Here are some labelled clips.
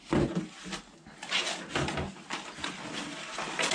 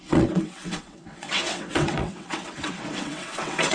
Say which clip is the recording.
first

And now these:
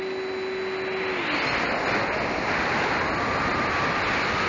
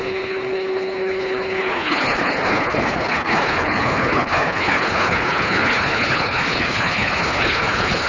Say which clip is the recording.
first